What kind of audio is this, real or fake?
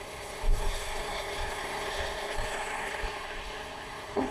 fake